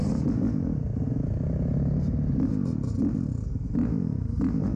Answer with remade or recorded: recorded